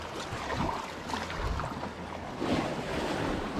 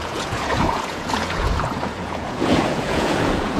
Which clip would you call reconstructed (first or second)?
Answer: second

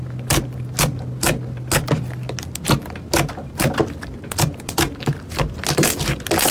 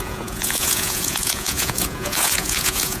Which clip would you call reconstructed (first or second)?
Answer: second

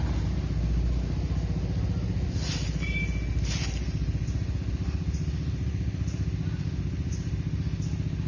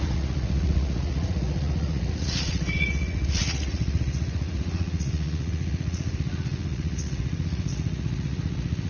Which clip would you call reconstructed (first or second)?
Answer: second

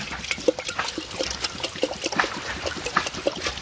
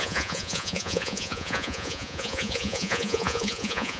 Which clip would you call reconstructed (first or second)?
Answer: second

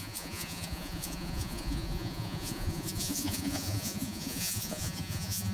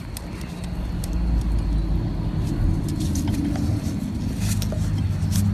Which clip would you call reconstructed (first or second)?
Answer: first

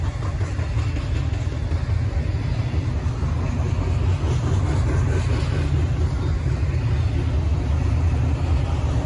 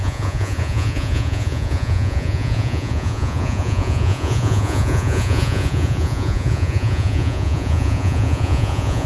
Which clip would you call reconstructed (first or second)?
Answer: second